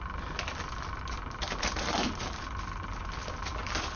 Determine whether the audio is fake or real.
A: real